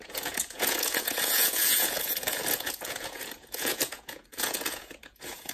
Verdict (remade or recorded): remade